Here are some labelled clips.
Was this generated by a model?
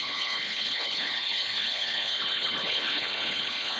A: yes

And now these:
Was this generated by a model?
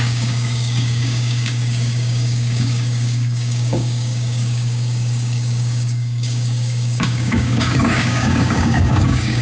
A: yes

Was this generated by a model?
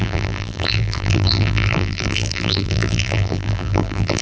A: yes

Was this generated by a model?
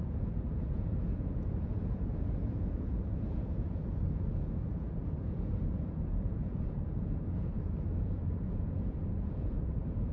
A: yes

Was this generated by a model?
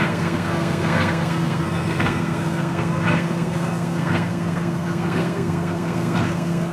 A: yes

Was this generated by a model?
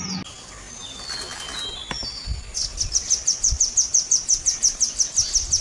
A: no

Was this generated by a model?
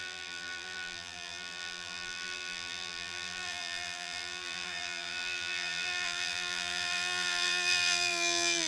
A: yes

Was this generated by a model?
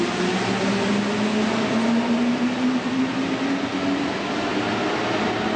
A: no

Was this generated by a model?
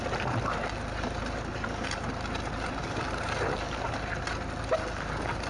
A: no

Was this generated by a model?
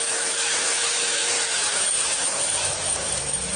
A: yes